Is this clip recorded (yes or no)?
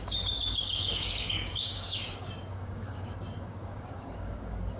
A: no